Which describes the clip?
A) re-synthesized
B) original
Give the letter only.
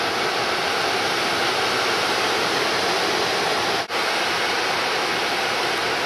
B